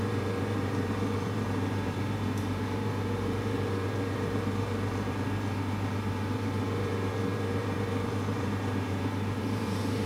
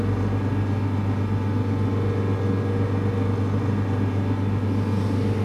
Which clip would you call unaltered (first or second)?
second